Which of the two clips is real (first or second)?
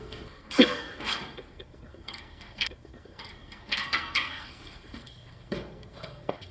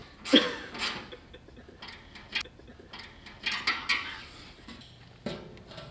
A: second